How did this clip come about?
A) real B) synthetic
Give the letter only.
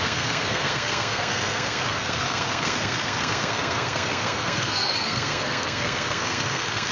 B